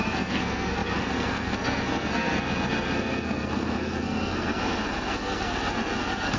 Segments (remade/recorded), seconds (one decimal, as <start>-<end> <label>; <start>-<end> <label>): 0.0-6.4 remade